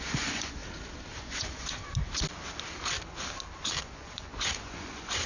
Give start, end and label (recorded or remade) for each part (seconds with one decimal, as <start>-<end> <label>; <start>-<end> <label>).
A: 0.0-0.6 remade; 0.6-1.2 recorded; 1.2-1.8 remade; 1.8-3.8 recorded; 3.8-5.3 remade